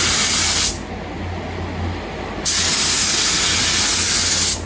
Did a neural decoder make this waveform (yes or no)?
no